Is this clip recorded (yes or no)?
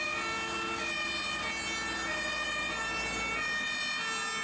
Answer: yes